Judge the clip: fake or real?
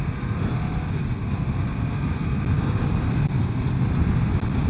real